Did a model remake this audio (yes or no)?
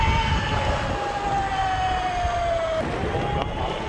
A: no